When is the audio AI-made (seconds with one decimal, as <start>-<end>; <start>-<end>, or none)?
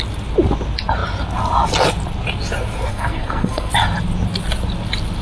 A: 2.9-3.7